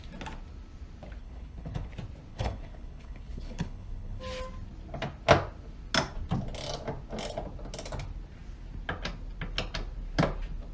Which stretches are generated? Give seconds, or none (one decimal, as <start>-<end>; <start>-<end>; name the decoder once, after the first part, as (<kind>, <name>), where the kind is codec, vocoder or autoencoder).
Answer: 1.2-1.9 (codec, HILCodec); 2.3-4.2